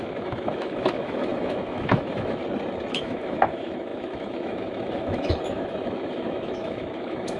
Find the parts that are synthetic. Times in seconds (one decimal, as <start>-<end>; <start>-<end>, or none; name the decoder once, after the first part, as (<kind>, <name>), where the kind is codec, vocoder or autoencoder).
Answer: 0.0-2.4 (autoencoder, DAC-VAE); 2.9-7.4